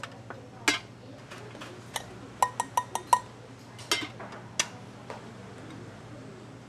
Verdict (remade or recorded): recorded